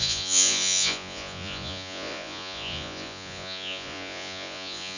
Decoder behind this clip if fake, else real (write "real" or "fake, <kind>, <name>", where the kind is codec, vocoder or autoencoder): fake, vocoder, Vocos